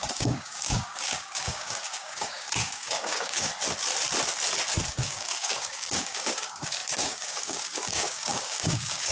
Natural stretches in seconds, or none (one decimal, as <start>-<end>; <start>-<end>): 3.5-4.9